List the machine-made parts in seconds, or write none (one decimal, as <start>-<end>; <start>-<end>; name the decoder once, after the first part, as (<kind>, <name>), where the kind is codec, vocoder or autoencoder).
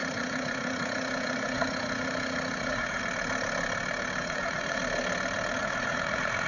0.0-3.0 (vocoder, Vocos); 4.2-4.8; 5.6-6.5